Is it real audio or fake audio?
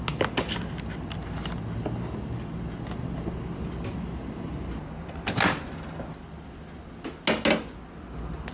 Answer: real